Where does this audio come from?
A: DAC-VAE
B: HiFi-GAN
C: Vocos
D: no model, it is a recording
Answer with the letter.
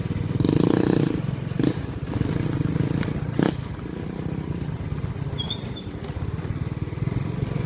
D